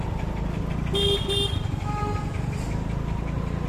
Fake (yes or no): no